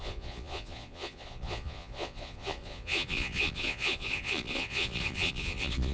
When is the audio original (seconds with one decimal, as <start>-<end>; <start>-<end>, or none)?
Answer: none